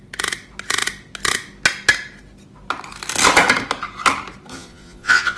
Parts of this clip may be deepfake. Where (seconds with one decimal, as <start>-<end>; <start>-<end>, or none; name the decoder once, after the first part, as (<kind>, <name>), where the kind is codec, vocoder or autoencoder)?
4.5-5.4 (vocoder, Vocos)